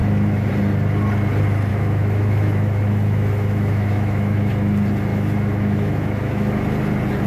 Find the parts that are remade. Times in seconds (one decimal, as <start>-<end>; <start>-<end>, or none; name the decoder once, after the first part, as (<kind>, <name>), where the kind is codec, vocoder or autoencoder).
0.0-0.5 (autoencoder, DAC-VAE); 1.7-4.5; 5.1-6.6